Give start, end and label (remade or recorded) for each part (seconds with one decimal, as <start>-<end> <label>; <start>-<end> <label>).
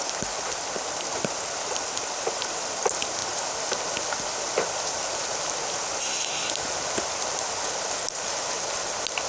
0.0-6.0 recorded; 6.0-6.5 remade; 6.5-9.3 recorded